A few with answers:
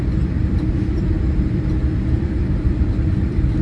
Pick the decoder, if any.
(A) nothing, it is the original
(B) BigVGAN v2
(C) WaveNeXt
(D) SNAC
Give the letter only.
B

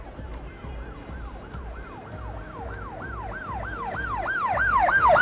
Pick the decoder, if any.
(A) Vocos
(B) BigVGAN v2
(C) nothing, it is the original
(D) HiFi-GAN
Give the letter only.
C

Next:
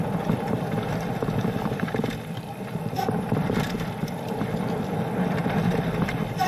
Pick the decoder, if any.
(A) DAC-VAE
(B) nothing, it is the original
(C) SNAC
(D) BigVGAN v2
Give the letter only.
D